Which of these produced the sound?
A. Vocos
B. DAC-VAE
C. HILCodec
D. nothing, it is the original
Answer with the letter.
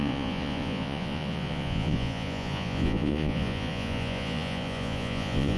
A